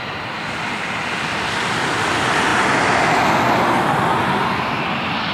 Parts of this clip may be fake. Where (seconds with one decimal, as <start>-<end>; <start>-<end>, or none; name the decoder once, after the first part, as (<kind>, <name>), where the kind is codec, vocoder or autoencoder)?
none